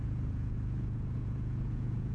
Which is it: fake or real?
fake